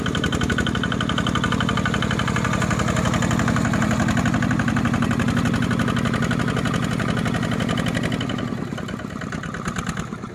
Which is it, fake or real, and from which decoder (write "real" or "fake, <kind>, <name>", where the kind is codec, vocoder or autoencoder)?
real